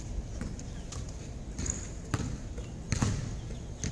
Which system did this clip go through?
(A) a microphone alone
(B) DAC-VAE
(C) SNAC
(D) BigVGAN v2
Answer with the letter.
A